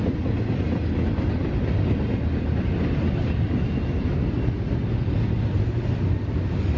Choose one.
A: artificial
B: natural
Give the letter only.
B